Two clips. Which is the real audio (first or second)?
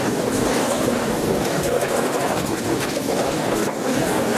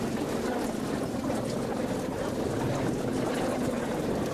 second